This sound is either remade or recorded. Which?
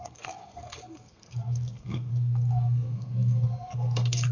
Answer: remade